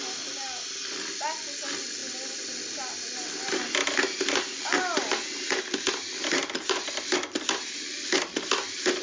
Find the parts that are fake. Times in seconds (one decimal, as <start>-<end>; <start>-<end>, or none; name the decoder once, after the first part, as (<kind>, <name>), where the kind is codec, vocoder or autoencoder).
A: none